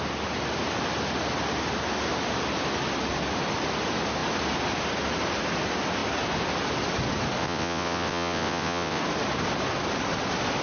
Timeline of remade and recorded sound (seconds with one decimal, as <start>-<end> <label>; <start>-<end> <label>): 0.0-7.4 recorded; 7.4-9.0 remade; 9.0-10.6 recorded